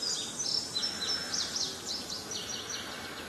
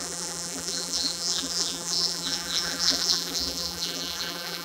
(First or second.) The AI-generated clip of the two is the second